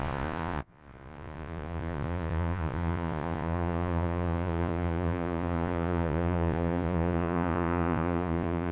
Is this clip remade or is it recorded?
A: remade